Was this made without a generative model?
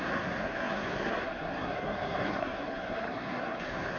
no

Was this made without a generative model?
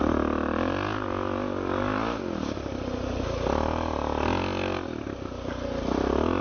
yes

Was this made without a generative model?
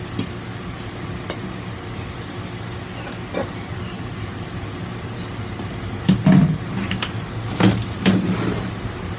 yes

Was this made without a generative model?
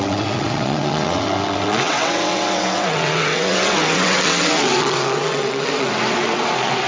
no